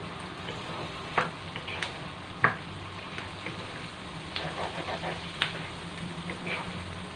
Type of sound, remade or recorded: recorded